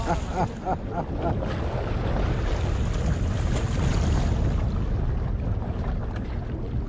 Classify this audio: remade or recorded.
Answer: recorded